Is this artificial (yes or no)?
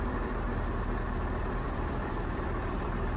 yes